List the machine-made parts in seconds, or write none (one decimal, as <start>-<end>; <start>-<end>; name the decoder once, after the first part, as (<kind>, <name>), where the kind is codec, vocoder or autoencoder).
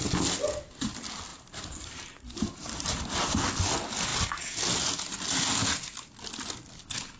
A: 1.3-3.1 (vocoder, BigVGAN v2)